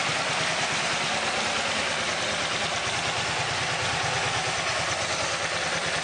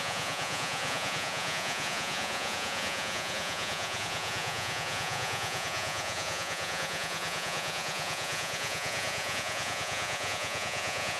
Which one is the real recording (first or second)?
first